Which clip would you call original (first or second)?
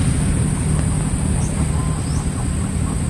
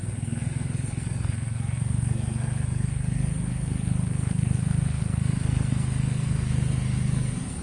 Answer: first